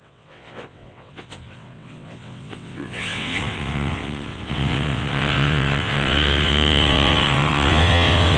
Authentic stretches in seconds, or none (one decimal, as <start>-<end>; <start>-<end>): none